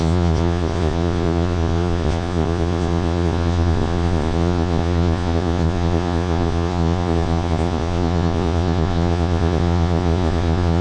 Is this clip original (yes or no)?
no